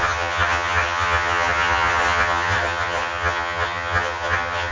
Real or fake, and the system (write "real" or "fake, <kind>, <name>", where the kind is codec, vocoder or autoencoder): fake, vocoder, HiFi-GAN